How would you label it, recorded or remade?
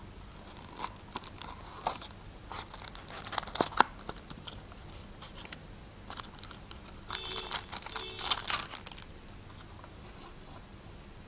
recorded